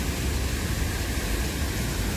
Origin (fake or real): real